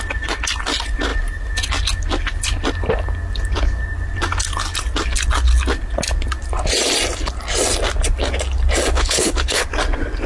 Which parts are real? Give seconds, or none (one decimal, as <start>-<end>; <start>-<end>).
0.0-8.9; 9.6-10.3